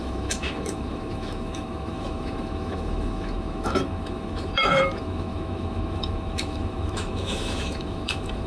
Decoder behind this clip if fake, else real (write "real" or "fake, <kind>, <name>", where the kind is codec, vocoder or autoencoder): fake, autoencoder, DAC-VAE